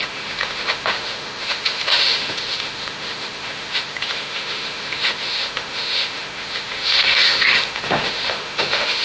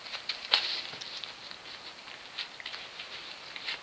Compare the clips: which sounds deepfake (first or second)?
first